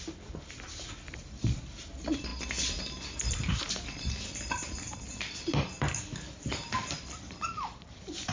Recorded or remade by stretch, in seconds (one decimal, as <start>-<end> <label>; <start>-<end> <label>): 0.0-2.3 remade; 2.3-6.4 recorded; 6.4-8.3 remade

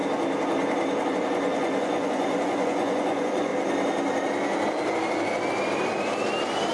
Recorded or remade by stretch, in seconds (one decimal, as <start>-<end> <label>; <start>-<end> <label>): 0.0-1.1 recorded; 1.1-3.5 remade; 3.5-6.7 recorded

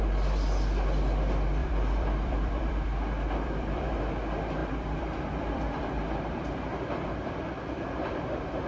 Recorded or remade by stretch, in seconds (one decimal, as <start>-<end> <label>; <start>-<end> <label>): 0.0-1.6 recorded; 1.6-3.9 remade; 3.9-4.6 recorded; 4.6-7.3 remade; 7.3-8.7 recorded

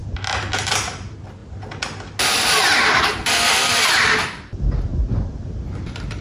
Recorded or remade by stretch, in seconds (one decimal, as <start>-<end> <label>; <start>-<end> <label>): 0.0-0.6 recorded; 0.6-1.4 remade; 1.4-2.3 recorded; 2.3-4.9 remade; 4.9-5.8 recorded; 5.8-6.2 remade

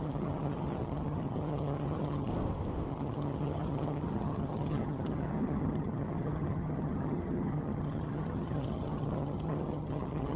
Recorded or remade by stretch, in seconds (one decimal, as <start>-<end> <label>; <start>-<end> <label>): 0.0-2.3 remade; 2.3-2.9 recorded; 2.9-10.4 remade

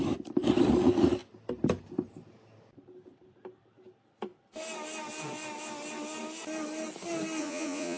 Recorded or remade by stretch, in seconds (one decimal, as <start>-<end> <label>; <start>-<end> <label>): 0.0-7.4 recorded; 7.4-8.0 remade

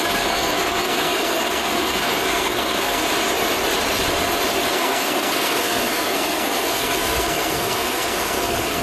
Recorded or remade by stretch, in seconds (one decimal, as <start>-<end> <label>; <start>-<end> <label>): 0.0-3.0 remade; 3.0-4.7 recorded; 4.7-8.8 remade